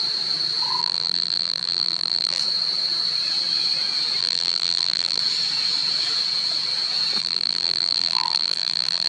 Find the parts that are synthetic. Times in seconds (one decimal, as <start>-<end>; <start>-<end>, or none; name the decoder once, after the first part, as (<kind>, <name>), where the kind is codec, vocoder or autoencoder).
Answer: 0.8-2.4 (vocoder, BigVGAN v2); 4.2-5.2; 7.2-9.1